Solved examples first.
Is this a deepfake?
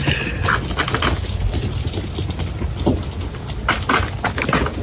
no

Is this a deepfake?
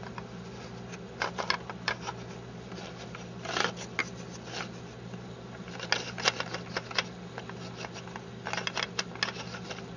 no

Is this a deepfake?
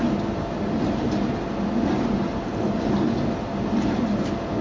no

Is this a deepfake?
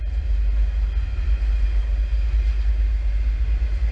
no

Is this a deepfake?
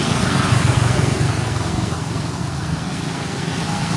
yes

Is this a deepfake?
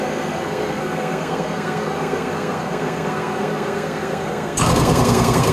yes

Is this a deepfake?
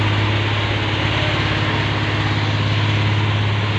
no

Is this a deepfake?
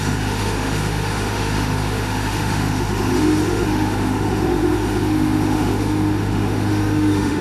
yes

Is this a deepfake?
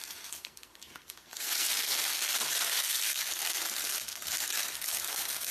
yes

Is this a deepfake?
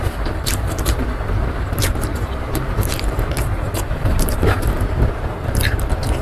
yes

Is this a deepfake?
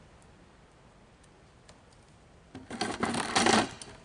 no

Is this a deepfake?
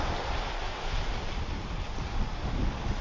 no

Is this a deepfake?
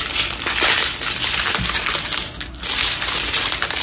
no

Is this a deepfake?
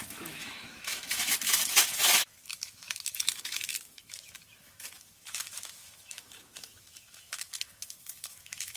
yes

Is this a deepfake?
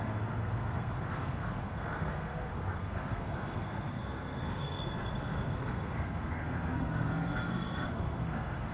yes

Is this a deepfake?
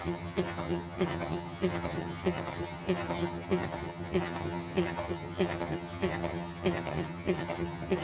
yes